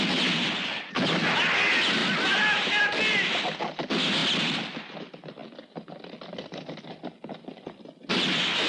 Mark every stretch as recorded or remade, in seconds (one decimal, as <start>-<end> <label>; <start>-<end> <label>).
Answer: 0.0-8.7 recorded